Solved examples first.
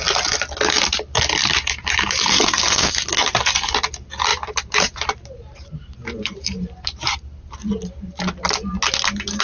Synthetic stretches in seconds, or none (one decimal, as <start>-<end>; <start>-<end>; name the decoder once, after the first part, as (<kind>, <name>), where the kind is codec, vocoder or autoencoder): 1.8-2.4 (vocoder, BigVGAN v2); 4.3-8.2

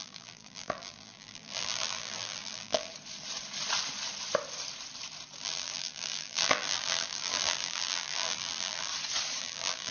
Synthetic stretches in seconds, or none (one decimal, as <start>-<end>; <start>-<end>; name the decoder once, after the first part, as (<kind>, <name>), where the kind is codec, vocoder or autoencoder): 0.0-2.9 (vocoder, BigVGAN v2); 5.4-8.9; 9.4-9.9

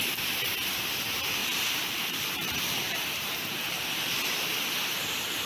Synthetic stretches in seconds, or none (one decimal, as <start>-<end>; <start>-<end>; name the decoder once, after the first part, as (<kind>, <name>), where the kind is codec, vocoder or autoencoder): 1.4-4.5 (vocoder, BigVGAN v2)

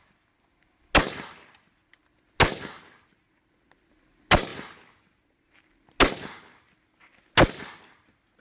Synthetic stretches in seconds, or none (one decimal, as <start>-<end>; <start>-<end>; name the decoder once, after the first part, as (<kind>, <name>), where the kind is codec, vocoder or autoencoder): none